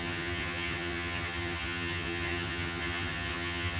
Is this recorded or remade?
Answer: remade